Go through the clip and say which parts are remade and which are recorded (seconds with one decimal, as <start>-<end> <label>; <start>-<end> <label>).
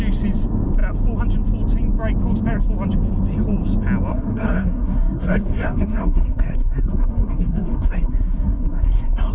0.0-4.1 recorded; 4.1-9.3 remade